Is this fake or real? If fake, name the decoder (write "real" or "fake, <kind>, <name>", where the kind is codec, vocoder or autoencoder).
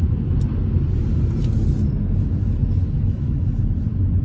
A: real